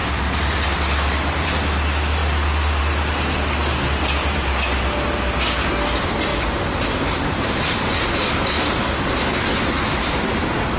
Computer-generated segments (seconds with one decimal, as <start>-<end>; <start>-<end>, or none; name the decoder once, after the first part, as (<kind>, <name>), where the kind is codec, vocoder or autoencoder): 0.0-0.8 (vocoder, BigVGAN v2); 6.3-9.4